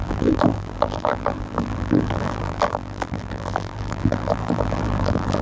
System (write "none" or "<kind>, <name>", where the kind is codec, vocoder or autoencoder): vocoder, BigVGAN v2